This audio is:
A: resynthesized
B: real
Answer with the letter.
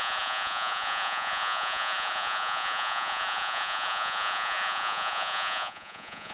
A